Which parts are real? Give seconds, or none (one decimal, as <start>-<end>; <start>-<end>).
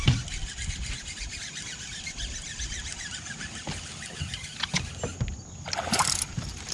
0.0-6.7